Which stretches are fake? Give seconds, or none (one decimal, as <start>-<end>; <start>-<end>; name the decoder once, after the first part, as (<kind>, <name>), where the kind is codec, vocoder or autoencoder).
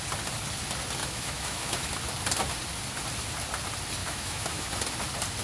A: 1.0-1.9 (autoencoder, DAC-VAE); 4.0-4.7